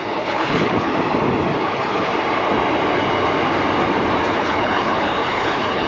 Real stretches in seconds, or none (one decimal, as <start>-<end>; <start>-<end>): 0.9-1.6; 2.1-4.3